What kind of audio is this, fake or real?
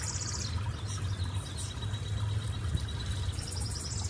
real